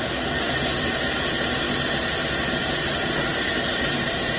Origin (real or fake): real